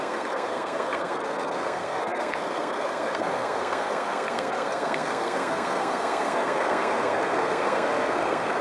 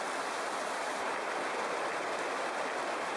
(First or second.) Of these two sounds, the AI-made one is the first